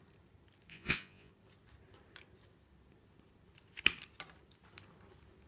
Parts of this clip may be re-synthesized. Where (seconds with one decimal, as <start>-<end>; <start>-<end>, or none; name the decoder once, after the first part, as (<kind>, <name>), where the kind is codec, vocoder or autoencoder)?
0.7-1.3 (vocoder, Vocos)